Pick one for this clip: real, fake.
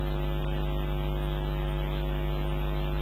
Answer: real